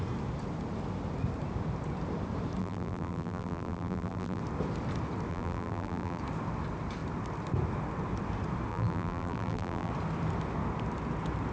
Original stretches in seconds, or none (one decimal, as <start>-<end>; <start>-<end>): 0.0-2.6; 4.4-5.3; 6.2-8.7; 9.9-11.5